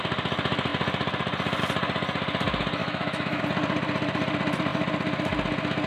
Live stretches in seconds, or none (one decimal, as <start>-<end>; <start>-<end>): 0.0-2.8; 3.4-5.9